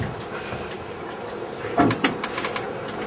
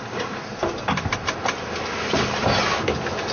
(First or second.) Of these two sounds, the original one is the first